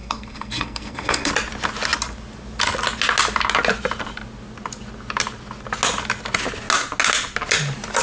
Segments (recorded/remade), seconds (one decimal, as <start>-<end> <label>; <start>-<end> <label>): 0.0-1.3 remade; 1.3-8.0 recorded